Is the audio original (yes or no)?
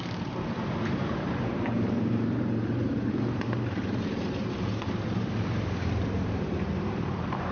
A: no